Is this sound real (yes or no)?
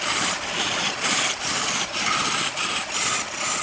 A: yes